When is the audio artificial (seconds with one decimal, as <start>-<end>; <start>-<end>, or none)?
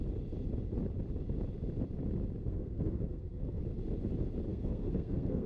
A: 2.4-3.6; 4.5-5.5